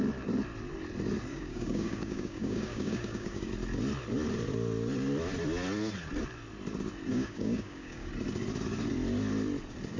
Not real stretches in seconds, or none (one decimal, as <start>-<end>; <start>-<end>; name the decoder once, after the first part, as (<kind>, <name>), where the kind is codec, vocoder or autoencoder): 1.3-3.5 (codec, DAC); 7.1-8.1